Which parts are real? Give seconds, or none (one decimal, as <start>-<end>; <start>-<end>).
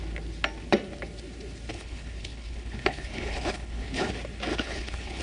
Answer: 0.0-1.7; 4.1-4.5